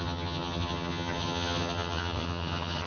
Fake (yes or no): yes